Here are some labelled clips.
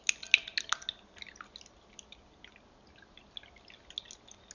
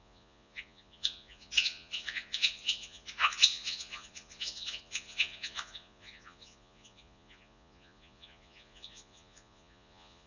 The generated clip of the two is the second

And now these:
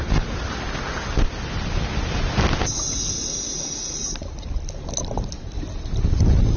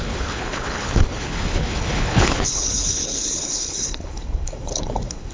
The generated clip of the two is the second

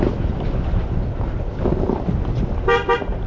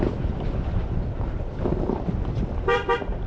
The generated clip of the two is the second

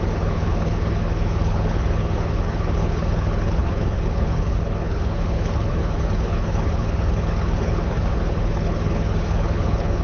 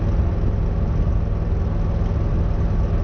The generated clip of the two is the first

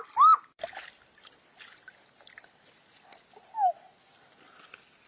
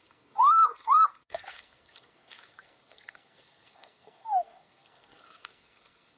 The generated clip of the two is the second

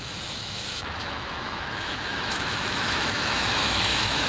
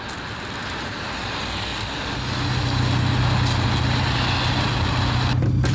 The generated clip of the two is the first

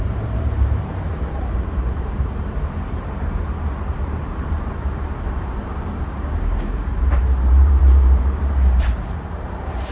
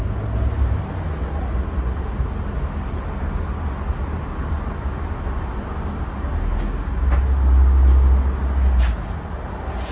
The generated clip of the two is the first